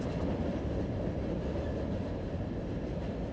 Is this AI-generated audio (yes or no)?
no